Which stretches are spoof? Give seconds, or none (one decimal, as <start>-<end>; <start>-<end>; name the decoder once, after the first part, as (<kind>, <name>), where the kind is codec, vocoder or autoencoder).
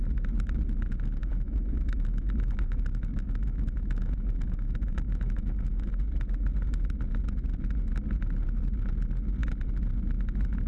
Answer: 1.2-5.9 (autoencoder, DAC-VAE)